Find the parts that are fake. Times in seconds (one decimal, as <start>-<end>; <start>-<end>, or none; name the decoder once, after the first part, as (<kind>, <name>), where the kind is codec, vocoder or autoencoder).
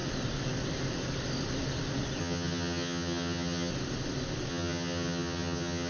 2.2-3.7 (vocoder, HiFi-GAN); 4.5-5.9